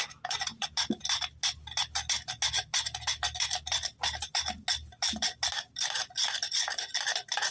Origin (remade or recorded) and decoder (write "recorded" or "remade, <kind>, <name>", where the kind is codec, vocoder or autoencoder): recorded